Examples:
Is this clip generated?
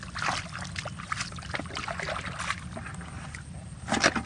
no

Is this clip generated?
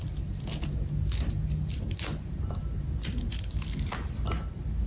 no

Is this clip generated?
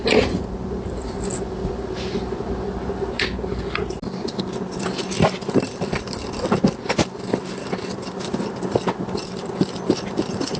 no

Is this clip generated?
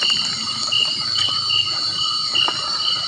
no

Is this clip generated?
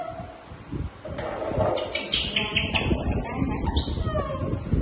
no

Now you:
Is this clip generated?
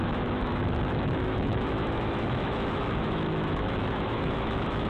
yes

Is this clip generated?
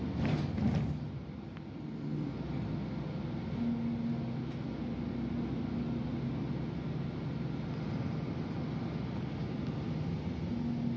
no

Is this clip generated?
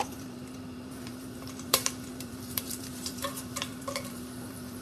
yes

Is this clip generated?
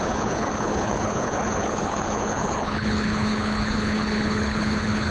yes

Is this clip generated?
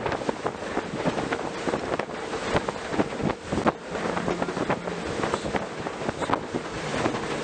no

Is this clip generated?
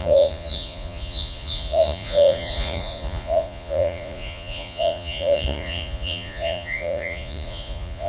yes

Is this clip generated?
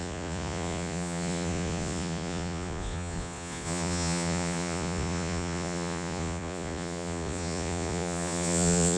yes